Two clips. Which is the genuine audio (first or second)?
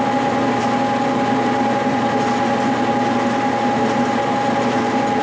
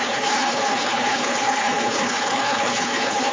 first